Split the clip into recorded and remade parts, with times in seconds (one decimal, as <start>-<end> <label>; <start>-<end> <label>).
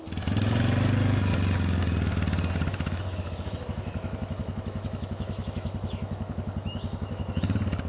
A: 0.0-2.7 recorded; 2.7-7.4 remade; 7.4-7.9 recorded